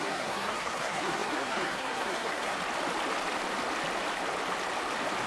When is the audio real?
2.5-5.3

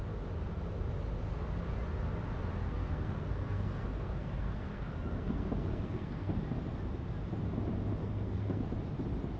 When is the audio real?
0.0-2.6; 6.4-8.0; 8.7-9.4

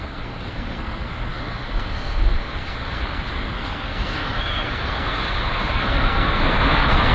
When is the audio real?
none